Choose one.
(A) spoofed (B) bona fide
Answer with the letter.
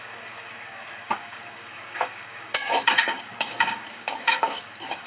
A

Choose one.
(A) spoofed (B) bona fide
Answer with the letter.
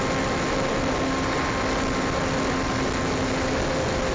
B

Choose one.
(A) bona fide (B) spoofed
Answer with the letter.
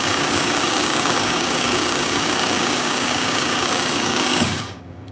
B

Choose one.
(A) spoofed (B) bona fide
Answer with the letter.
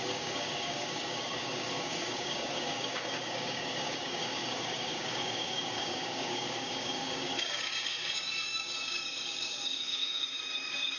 A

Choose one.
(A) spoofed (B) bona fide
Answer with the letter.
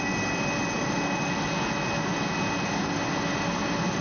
B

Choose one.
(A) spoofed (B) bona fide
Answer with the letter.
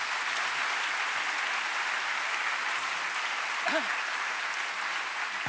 B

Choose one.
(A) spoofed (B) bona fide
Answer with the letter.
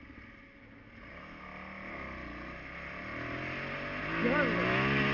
B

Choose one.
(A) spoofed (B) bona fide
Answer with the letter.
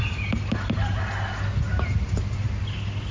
B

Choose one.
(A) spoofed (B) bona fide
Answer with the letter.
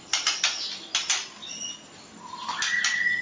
B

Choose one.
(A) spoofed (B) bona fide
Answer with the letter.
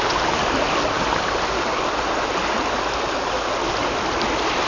B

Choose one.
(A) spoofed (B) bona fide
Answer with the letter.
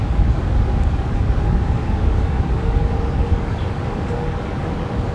A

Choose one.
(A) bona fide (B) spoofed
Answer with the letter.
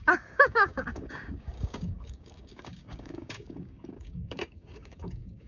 B